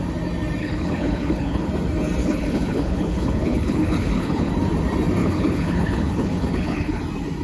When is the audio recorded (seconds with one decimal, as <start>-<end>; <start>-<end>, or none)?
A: 0.0-0.6; 1.7-2.2; 4.5-5.2; 7.0-7.4